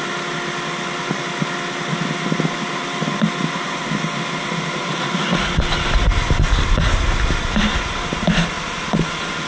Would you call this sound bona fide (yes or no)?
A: yes